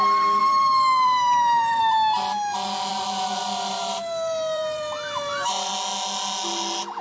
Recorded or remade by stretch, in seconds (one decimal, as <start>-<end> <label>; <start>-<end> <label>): 0.0-0.4 recorded; 0.4-1.8 remade; 1.8-2.9 recorded; 2.9-5.7 remade; 5.7-7.0 recorded